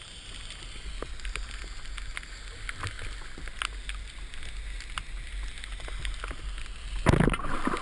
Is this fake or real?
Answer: real